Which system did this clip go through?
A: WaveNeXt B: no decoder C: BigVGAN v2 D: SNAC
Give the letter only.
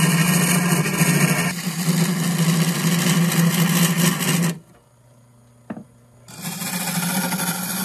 B